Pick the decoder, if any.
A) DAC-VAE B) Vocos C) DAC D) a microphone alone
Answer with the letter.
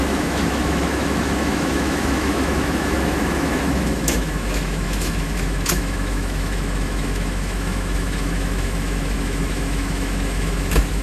A